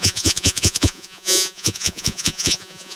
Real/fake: fake